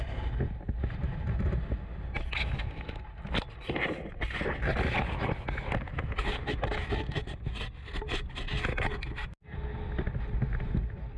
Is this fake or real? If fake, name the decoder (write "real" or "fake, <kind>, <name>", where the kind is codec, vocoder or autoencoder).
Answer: real